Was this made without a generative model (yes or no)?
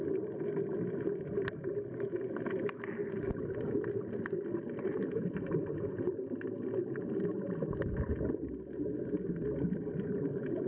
yes